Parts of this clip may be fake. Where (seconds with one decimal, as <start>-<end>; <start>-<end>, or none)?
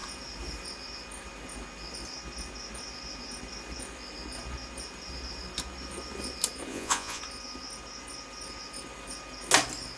6.7-7.2